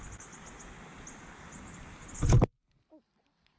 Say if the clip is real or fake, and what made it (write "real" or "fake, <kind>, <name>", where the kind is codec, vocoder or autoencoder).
real